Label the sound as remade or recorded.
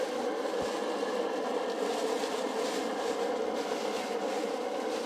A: recorded